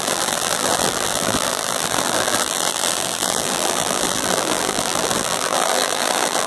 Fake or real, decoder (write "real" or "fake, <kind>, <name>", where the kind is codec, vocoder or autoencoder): fake, vocoder, BigVGAN v2